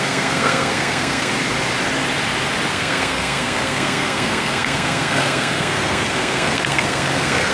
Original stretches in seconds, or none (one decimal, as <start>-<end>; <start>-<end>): 1.3-2.7